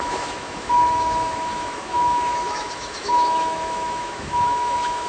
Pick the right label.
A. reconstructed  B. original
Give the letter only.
A